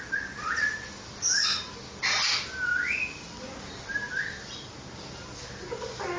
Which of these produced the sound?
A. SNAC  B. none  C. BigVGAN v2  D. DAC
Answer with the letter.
B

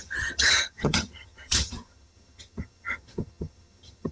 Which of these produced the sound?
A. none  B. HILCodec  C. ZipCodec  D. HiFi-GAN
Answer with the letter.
D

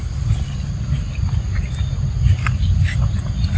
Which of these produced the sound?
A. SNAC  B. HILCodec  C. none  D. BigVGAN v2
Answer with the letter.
C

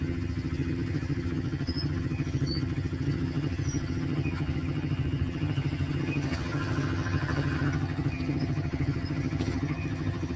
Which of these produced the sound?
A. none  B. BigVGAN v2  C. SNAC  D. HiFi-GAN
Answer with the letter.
D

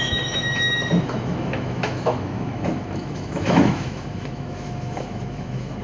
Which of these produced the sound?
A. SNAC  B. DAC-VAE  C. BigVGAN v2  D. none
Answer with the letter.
B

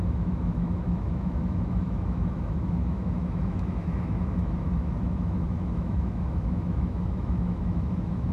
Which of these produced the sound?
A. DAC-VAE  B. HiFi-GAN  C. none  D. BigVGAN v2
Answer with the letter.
A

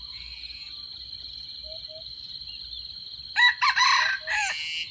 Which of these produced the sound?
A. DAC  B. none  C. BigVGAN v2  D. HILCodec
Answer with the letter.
B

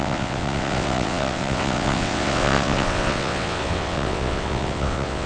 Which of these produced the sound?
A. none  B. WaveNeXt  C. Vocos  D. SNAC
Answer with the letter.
B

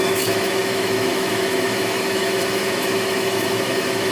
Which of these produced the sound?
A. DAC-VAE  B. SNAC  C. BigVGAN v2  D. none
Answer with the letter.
A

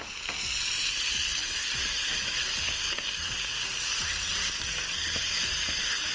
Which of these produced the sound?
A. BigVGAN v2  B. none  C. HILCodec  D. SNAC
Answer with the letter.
B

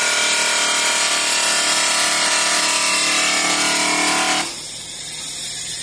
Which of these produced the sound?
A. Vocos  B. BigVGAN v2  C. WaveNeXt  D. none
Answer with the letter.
D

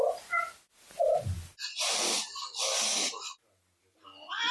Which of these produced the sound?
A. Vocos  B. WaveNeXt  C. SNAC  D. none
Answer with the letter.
D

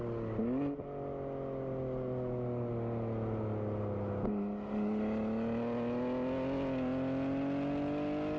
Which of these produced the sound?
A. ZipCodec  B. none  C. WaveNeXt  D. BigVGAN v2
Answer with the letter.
B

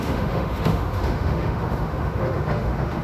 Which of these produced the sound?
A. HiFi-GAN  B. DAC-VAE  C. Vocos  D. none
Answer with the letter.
B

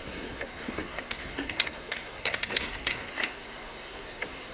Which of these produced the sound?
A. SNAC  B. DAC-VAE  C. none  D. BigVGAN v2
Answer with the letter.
A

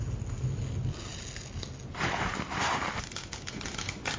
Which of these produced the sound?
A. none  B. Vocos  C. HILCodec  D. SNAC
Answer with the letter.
A